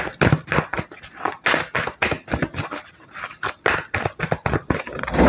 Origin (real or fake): real